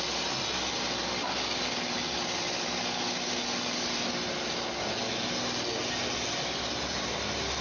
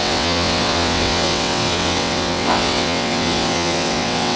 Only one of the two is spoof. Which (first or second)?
second